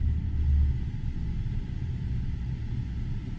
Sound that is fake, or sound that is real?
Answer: real